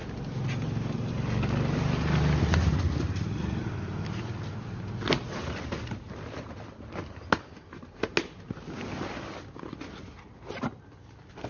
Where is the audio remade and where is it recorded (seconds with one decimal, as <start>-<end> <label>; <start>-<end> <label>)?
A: 0.0-11.5 recorded